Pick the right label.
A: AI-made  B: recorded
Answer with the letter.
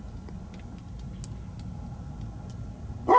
B